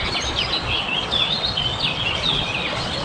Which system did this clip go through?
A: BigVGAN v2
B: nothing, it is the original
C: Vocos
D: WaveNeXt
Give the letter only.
C